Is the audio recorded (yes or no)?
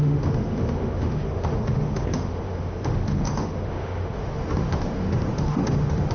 no